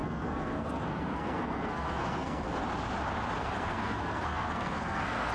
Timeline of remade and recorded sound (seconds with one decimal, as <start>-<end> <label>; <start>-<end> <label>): 0.0-2.6 remade; 2.6-3.4 recorded; 3.4-5.3 remade